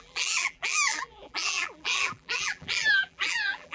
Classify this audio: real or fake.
fake